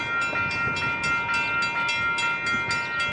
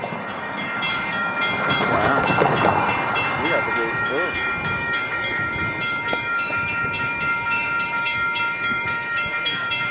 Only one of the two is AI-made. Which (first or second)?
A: second